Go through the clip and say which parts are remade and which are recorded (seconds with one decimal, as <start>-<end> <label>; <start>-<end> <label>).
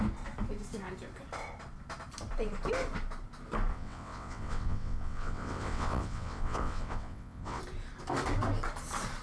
0.0-3.7 recorded; 3.7-7.6 remade; 7.6-9.2 recorded